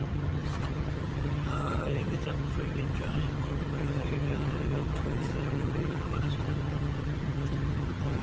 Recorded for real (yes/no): no